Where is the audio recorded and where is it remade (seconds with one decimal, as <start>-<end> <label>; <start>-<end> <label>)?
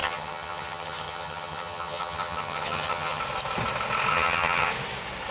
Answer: 0.0-3.2 remade; 3.2-4.1 recorded; 4.1-4.7 remade; 4.7-5.3 recorded